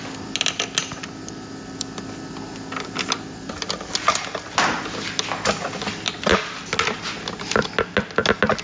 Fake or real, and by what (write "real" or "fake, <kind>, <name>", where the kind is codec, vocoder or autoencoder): real